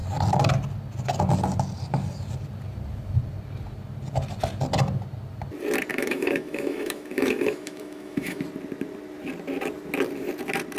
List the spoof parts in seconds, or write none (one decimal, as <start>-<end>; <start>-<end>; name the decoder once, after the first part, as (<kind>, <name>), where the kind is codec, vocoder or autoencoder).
5.9-8.4 (autoencoder, DAC-VAE)